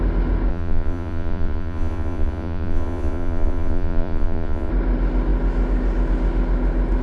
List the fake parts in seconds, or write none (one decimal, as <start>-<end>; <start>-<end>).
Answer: 0.5-4.7